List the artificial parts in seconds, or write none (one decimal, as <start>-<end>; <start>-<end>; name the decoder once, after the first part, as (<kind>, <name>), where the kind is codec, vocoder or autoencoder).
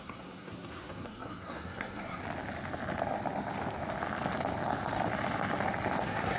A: 0.0-2.2 (codec, SNAC); 6.0-6.4